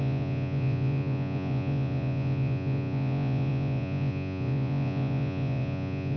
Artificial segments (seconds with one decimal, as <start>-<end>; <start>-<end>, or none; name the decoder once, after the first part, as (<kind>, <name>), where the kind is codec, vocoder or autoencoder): 0.0-6.2 (vocoder, Vocos)